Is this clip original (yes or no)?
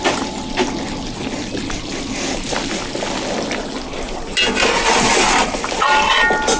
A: yes